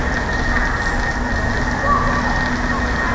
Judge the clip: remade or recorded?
recorded